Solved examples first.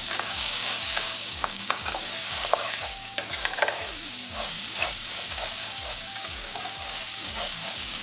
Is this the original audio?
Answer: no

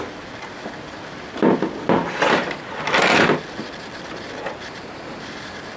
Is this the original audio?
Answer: yes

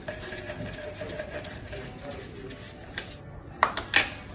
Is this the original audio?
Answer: yes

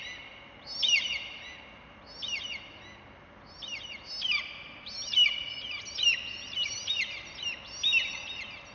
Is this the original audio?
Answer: yes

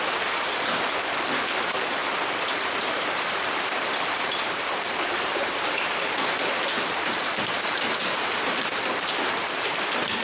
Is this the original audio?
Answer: no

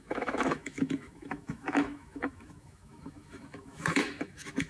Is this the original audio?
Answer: no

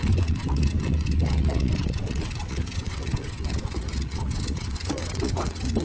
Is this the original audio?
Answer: no